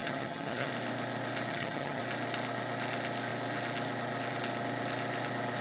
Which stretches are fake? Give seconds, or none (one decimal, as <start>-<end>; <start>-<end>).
0.0-0.7; 1.5-2.0